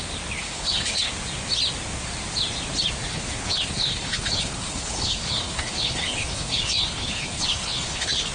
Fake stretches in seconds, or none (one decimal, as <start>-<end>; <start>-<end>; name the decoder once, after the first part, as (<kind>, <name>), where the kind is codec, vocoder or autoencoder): 0.4-1.1 (codec, HILCodec); 3.1-8.3